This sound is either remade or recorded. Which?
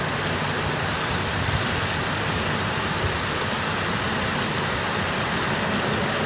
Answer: recorded